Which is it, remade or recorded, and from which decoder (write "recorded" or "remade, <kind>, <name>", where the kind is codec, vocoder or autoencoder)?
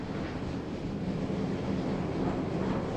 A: recorded